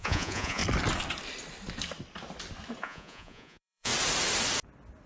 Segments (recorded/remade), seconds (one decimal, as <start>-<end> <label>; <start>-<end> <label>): 0.0-0.6 remade; 0.6-2.8 recorded; 2.8-3.9 remade; 3.9-5.1 recorded